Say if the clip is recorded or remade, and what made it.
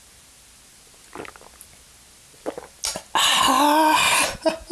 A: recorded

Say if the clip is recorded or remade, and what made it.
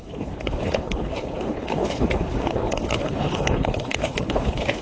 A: remade, codec, HILCodec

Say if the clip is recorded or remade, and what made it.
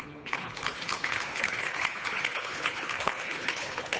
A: remade, codec, HILCodec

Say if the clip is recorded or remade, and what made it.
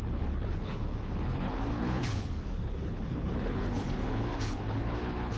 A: remade, codec, HILCodec